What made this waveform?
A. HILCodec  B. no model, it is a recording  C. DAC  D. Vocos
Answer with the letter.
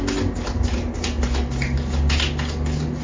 B